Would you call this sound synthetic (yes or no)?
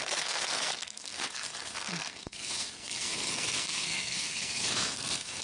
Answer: yes